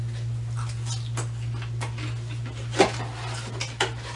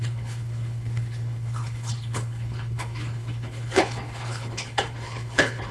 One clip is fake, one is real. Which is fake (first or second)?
second